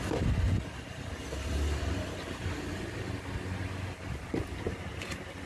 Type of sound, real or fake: real